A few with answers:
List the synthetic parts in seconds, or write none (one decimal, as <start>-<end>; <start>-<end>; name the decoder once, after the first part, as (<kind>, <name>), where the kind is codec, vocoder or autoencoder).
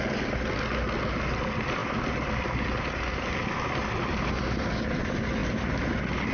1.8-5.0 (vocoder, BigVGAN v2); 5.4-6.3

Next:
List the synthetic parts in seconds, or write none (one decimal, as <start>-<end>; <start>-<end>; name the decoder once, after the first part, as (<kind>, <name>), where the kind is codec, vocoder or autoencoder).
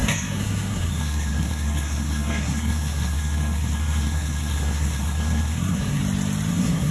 0.0-6.0 (codec, SNAC); 6.5-6.9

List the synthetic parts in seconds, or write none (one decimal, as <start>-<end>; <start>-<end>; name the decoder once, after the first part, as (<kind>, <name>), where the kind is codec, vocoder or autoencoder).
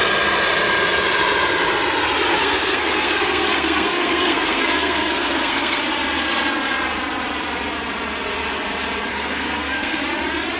2.3-5.8 (codec, SNAC); 9.1-10.0